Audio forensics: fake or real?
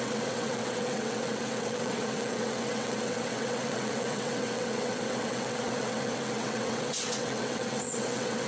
fake